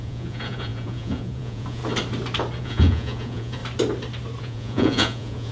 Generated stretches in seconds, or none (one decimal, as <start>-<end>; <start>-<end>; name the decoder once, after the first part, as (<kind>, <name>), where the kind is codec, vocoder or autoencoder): 0.0-1.8 (vocoder, Vocos); 2.6-3.6; 4.4-5.5